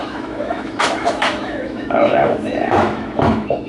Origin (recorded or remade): remade